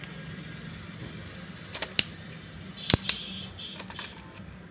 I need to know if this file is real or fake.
real